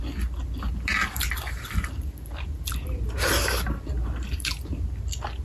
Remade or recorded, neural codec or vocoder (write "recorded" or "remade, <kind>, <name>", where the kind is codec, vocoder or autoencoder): recorded